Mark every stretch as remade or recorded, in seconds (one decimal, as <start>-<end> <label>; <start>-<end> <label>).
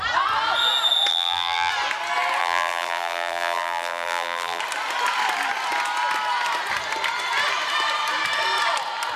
0.0-1.1 recorded; 1.1-1.7 remade; 1.7-2.4 recorded; 2.4-4.6 remade; 4.6-9.2 recorded